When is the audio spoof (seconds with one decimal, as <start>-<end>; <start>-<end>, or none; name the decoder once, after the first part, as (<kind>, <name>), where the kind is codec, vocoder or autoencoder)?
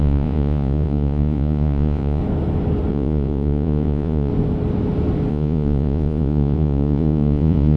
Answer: 0.0-2.2 (vocoder, Vocos); 2.9-4.3; 5.3-7.8